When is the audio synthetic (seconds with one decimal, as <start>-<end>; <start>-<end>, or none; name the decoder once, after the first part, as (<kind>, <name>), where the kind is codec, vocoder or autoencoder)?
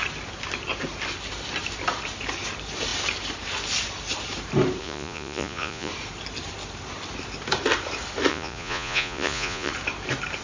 4.8-5.9 (vocoder, Vocos); 8.3-9.7